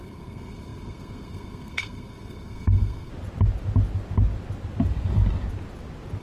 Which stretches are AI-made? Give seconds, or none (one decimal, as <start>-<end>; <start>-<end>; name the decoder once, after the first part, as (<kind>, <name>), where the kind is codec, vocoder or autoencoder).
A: 0.0-3.1 (codec, SNAC)